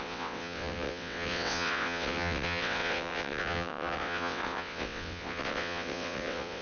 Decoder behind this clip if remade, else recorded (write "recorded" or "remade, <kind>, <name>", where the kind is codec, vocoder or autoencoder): remade, vocoder, WaveNeXt